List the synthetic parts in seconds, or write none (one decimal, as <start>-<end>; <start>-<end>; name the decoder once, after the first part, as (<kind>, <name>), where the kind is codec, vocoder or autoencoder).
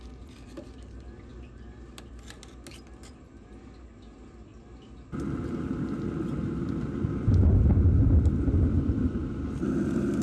none